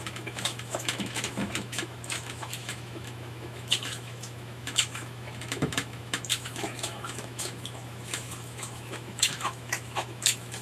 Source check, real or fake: fake